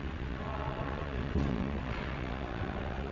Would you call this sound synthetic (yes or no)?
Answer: yes